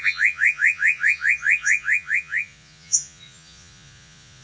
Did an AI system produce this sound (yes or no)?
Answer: yes